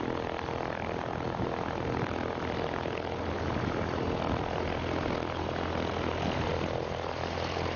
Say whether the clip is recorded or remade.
recorded